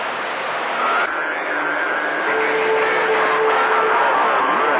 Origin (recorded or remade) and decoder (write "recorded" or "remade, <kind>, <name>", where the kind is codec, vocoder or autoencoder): recorded